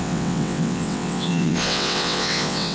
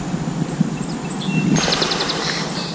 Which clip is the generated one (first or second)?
first